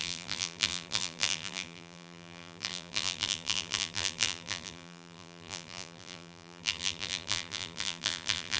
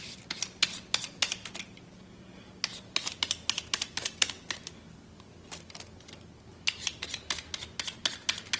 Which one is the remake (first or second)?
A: first